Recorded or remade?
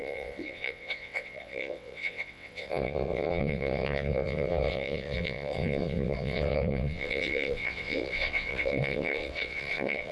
remade